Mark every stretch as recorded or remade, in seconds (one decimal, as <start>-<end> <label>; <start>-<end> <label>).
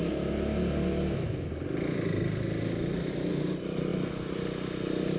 0.0-5.2 recorded